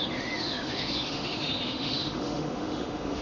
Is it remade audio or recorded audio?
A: remade